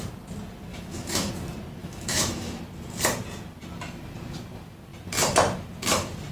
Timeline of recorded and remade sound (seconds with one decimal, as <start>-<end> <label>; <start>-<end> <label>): 0.0-0.7 recorded; 0.7-1.3 remade; 1.3-1.8 recorded; 1.8-2.6 remade; 2.6-6.3 recorded